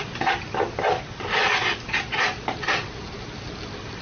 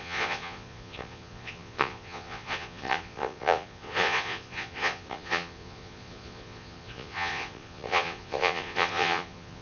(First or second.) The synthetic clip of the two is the second